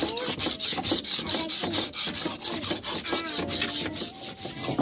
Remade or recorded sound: recorded